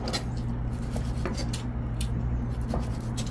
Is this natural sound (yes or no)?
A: yes